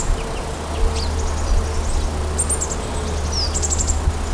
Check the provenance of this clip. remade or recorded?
recorded